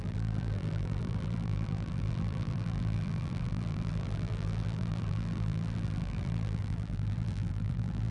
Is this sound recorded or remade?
remade